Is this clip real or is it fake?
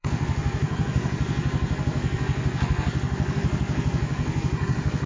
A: fake